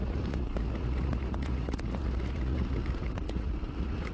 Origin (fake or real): fake